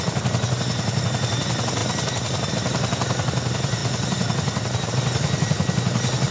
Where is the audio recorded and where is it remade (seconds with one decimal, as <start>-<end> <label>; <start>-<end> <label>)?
0.0-6.3 recorded